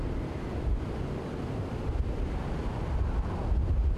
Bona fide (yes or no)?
yes